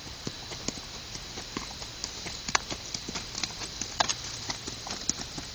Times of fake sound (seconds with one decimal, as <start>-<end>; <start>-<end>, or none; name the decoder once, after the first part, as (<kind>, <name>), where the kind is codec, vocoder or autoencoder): 2.0-2.6 (vocoder, BigVGAN v2); 4.1-4.6